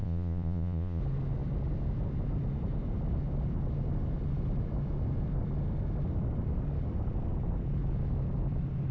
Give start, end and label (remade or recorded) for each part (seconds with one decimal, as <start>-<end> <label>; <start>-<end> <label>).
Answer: 0.0-1.0 remade; 1.0-8.9 recorded